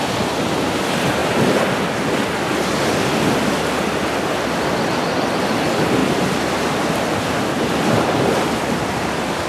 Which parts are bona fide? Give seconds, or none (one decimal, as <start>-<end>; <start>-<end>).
1.2-5.4; 6.0-7.0